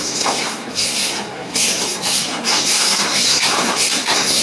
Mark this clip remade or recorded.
remade